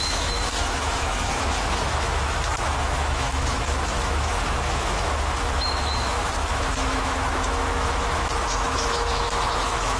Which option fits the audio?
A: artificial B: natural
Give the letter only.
A